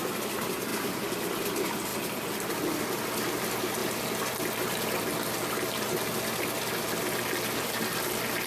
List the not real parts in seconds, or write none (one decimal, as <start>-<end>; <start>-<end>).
1.9-2.8